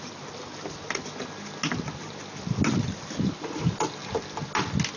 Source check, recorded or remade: recorded